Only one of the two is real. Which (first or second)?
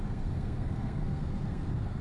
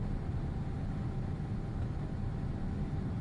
second